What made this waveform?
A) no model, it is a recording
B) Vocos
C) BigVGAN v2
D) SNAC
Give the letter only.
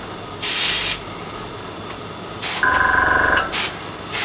A